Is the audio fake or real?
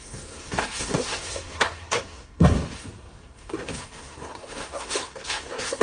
fake